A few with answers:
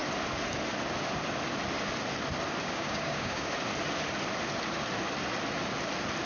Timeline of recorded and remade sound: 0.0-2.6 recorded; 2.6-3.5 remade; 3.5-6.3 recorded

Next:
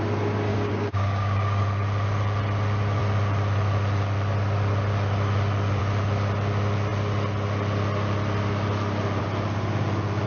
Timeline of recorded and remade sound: 0.0-0.5 recorded; 0.5-1.6 remade; 1.6-10.3 recorded

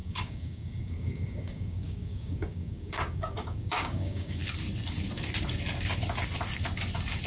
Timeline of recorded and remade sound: 0.0-4.4 remade; 4.4-7.3 recorded

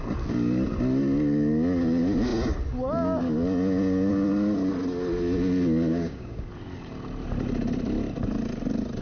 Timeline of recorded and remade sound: 0.0-5.9 recorded; 5.9-6.5 remade; 6.5-9.0 recorded